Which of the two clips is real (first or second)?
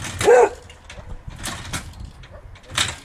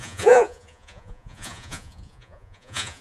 first